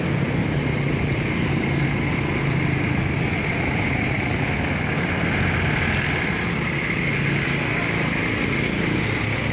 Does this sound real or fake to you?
real